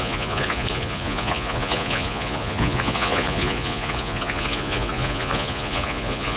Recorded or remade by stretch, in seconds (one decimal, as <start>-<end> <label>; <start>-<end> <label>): 0.0-6.4 remade